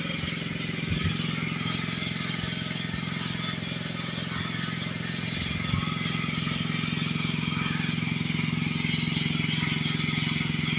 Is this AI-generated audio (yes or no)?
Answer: no